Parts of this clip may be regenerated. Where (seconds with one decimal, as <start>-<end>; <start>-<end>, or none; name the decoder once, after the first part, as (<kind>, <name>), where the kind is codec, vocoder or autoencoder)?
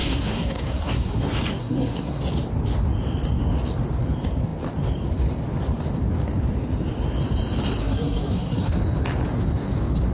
0.0-1.2 (codec, SNAC); 1.6-2.2; 7.8-8.8